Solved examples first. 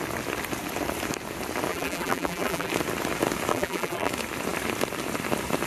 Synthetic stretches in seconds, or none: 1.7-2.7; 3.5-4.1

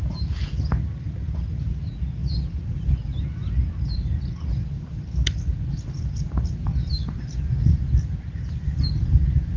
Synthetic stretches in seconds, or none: none

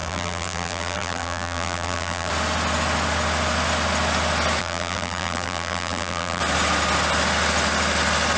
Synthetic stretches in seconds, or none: 0.0-2.3; 4.6-6.4

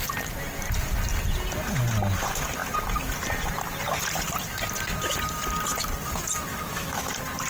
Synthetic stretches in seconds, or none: 6.5-7.1

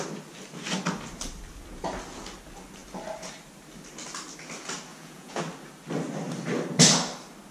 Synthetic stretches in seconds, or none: 4.9-5.4

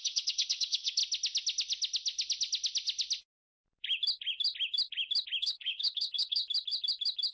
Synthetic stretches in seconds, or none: 0.0-1.0; 5.4-6.4

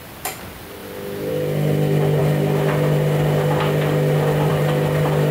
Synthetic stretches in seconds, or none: 0.0-0.8; 1.3-2.2; 4.5-5.3